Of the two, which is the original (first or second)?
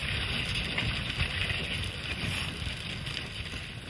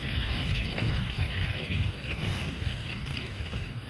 first